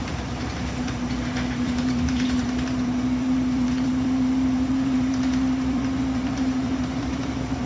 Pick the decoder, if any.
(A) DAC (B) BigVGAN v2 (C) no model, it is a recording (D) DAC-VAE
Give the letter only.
B